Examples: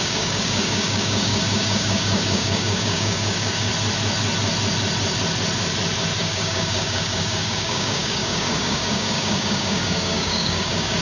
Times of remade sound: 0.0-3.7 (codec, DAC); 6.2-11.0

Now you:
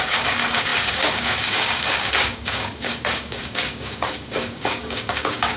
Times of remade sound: 0.0-5.6 (codec, DAC)

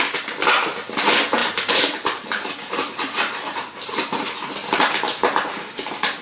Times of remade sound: 1.4-4.5 (vocoder, BigVGAN v2)

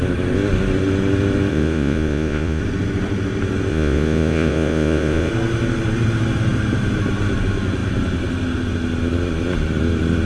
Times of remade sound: 1.5-2.6 (vocoder, Vocos); 3.7-5.3

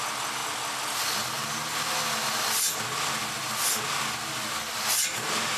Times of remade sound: none

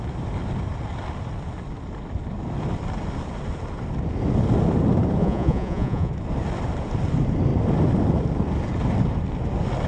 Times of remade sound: 5.2-6.1 (vocoder, Vocos)